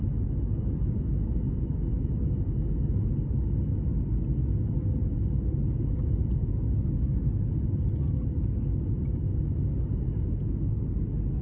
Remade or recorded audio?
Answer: recorded